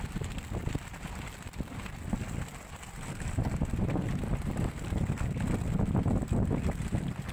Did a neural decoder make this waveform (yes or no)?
no